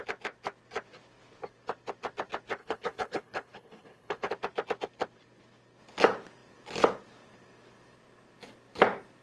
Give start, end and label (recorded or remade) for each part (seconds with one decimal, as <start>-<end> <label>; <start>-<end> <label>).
0.0-2.6 recorded; 2.6-4.3 remade; 4.3-9.2 recorded